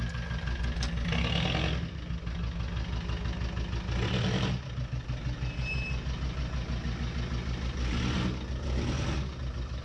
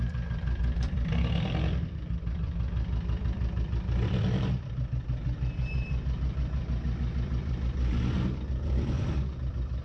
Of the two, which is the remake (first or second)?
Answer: second